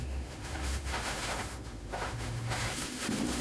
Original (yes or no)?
no